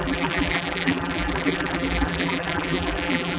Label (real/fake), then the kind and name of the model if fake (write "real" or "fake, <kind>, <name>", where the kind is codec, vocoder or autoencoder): fake, vocoder, BigVGAN v2